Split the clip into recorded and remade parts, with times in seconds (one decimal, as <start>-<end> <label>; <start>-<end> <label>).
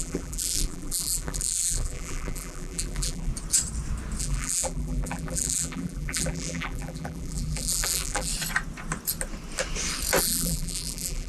0.0-3.3 remade; 3.3-4.2 recorded; 4.2-8.3 remade; 8.3-10.2 recorded; 10.2-11.3 remade